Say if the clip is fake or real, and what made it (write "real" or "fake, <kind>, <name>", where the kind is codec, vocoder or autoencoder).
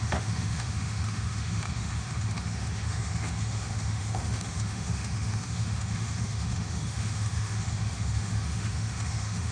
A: fake, autoencoder, DAC-VAE